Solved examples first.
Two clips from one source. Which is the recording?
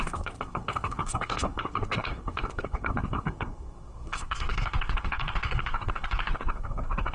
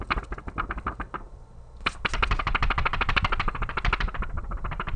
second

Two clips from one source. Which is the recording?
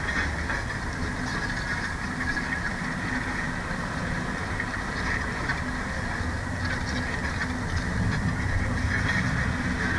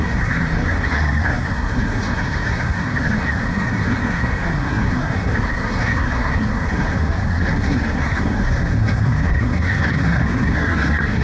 first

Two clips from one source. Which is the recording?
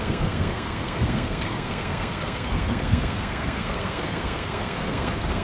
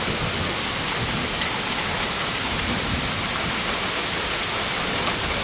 second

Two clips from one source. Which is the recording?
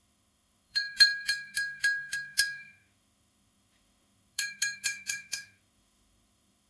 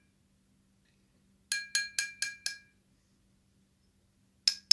second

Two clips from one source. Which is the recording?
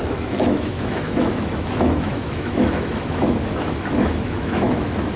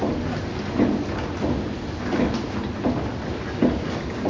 second